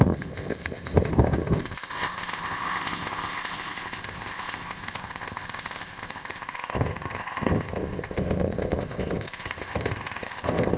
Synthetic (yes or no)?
yes